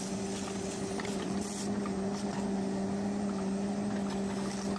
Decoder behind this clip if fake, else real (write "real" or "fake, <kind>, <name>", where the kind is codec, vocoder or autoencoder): real